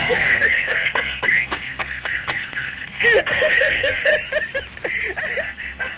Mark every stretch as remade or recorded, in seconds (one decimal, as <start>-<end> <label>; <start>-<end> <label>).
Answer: 0.0-4.1 remade; 4.1-5.4 recorded; 5.4-6.0 remade